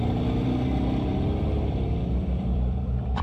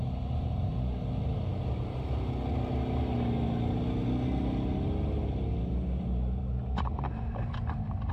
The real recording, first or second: second